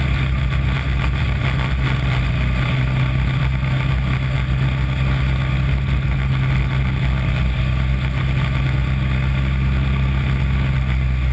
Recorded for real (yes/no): yes